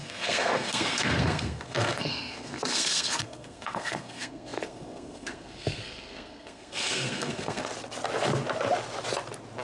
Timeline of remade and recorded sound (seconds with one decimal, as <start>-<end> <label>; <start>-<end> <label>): 0.0-7.7 remade; 7.7-9.6 recorded